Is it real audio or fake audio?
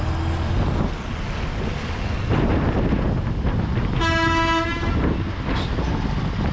real